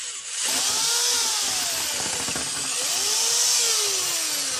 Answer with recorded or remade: recorded